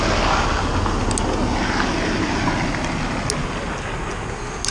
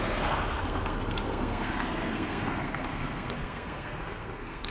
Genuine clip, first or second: first